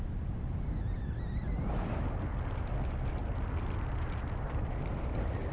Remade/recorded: recorded